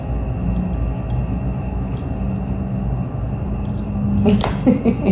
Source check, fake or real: real